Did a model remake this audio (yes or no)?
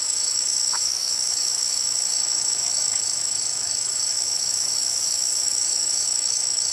yes